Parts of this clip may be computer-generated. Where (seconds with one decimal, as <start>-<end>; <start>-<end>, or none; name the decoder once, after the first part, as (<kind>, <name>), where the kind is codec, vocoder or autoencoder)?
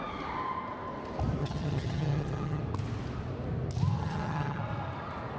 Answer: 1.4-2.6 (vocoder, HiFi-GAN); 4.0-4.6